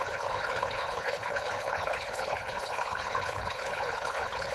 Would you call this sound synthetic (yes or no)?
yes